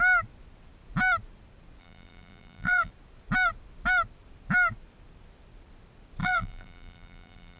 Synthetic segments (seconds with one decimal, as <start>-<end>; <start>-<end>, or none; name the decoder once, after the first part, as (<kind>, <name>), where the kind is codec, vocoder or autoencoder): 1.8-2.9 (vocoder, BigVGAN v2); 6.2-7.6

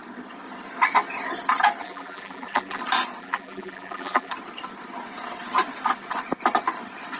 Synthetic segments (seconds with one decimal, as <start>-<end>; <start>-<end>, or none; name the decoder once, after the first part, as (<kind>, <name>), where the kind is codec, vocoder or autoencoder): 1.8-2.8 (vocoder, BigVGAN v2); 3.2-4.3

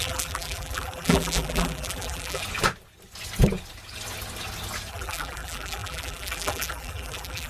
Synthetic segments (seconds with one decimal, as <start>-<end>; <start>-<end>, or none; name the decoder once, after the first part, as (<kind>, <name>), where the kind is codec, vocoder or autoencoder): 0.0-2.4 (vocoder, BigVGAN v2); 4.9-7.5

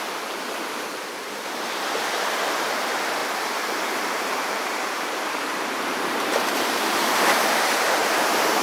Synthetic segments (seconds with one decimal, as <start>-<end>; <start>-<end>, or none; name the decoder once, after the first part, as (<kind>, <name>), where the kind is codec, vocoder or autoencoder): 0.0-3.2 (vocoder, BigVGAN v2); 3.8-8.0

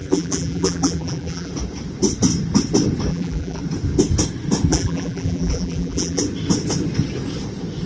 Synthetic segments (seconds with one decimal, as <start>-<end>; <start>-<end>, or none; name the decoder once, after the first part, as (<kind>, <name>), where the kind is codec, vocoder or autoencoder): 0.0-1.5 (vocoder, BigVGAN v2); 3.1-3.6; 4.7-6.2

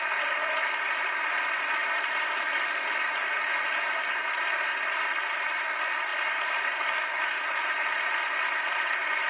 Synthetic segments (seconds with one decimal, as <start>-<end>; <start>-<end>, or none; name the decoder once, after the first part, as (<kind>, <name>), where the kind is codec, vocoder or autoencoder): 1.8-2.3 (vocoder, BigVGAN v2)

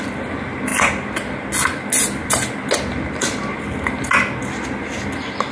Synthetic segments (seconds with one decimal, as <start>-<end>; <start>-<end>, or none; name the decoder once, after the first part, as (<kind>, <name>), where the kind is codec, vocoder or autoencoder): none

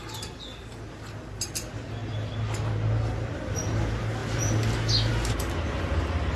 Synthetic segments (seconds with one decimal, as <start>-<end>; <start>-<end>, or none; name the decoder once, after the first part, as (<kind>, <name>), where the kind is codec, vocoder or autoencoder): none